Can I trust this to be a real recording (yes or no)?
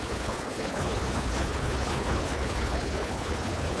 no